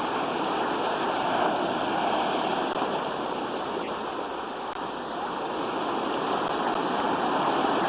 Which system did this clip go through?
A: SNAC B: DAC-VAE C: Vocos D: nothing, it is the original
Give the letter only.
D